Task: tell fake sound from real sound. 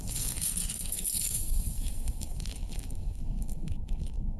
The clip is fake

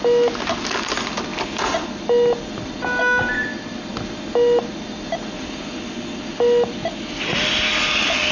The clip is real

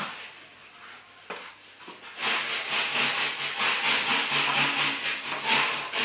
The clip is real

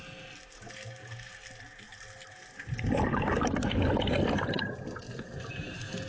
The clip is real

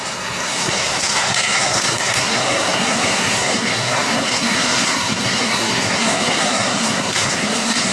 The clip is fake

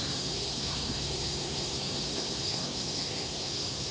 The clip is fake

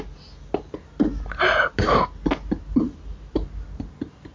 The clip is real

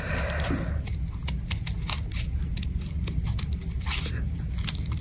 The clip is real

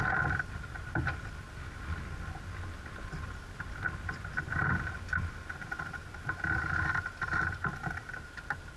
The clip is real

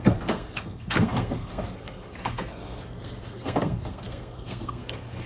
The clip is fake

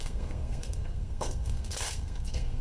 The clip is fake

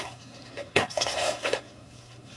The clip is fake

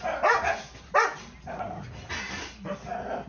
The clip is real